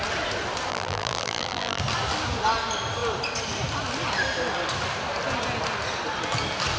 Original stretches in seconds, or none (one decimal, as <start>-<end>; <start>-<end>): 0.0-0.7; 1.8-6.8